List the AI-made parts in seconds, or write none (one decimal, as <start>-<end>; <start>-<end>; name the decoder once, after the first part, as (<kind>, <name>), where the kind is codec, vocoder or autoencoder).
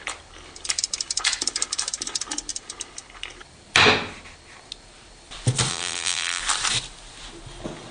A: 5.7-6.4 (vocoder, BigVGAN v2)